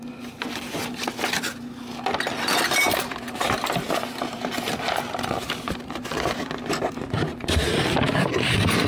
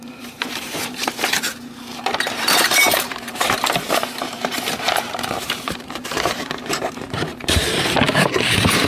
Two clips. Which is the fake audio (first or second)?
second